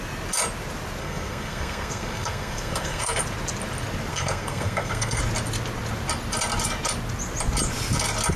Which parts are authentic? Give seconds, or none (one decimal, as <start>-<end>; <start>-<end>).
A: 0.0-1.0; 3.2-4.1; 5.2-8.4